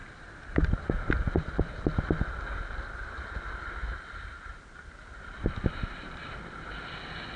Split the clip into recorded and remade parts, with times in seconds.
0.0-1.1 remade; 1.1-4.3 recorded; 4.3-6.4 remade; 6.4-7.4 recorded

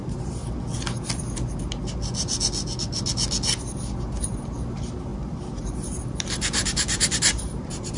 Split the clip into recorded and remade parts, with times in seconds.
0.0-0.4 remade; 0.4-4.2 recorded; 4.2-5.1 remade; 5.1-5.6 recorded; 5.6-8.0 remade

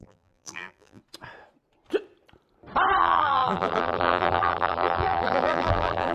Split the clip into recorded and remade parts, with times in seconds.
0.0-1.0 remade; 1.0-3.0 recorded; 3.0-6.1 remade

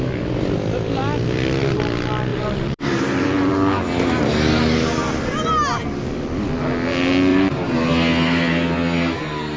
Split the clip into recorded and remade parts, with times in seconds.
0.0-2.3 recorded; 2.3-3.5 remade; 3.5-7.3 recorded; 7.3-7.9 remade; 7.9-9.6 recorded

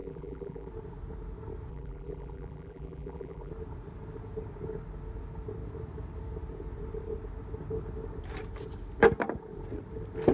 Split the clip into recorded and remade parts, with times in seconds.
0.0-0.7 remade; 0.7-1.7 recorded; 1.7-3.5 remade; 3.5-10.3 recorded

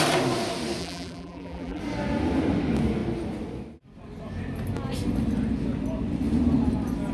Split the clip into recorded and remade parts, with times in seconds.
0.0-0.8 recorded; 0.8-1.8 remade; 1.8-7.1 recorded

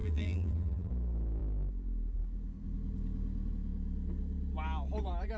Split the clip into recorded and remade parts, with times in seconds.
0.0-0.9 remade; 0.9-5.4 recorded